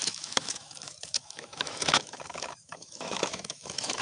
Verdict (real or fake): fake